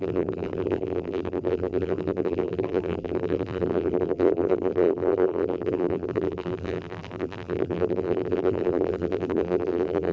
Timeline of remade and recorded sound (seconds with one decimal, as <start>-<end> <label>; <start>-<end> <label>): 0.0-10.1 remade